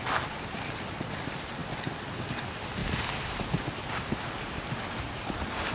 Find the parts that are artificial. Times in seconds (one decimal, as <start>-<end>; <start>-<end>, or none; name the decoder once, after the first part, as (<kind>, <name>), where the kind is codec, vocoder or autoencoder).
0.0-1.6 (vocoder, BigVGAN v2); 2.2-5.7